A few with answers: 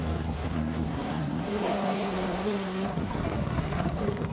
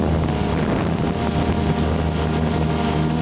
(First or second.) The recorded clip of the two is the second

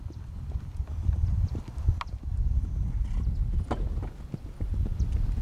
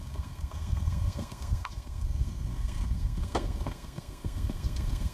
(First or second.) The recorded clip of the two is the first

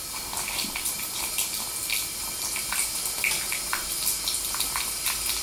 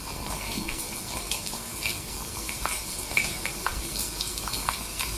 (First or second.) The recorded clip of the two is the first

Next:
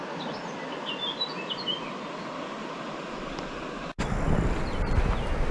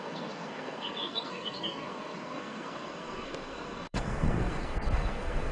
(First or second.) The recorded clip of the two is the first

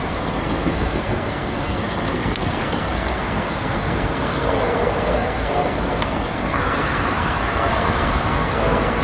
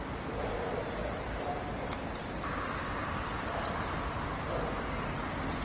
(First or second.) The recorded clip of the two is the second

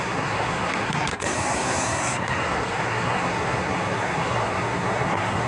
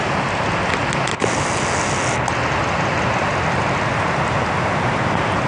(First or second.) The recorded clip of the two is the second